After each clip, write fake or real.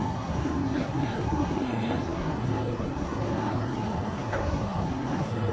fake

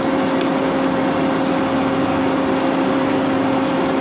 real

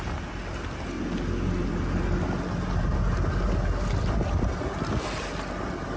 real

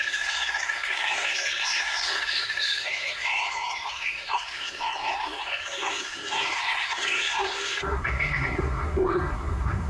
fake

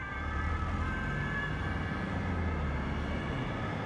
real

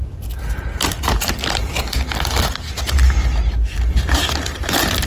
real